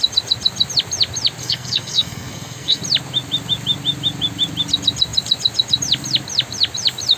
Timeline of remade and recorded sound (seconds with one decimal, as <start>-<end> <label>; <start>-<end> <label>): 0.0-1.4 recorded; 1.4-2.8 remade; 2.8-7.2 recorded